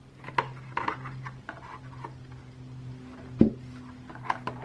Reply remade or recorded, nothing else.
recorded